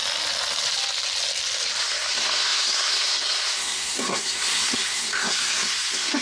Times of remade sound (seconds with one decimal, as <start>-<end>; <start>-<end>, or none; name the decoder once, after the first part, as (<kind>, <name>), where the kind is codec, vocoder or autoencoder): 1.8-6.2 (codec, SNAC)